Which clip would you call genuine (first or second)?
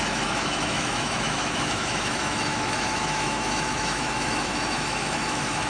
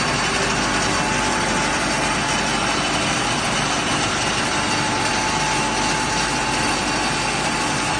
second